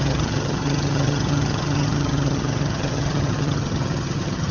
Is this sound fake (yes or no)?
yes